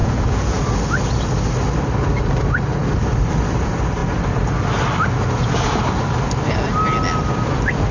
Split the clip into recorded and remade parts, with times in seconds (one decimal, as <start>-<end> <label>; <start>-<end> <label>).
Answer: 0.0-0.6 remade; 0.6-7.9 recorded